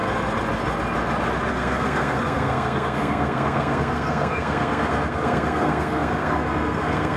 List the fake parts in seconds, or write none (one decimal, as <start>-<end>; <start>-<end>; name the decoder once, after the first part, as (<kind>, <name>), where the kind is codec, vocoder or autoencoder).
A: 1.5-7.2 (codec, SNAC)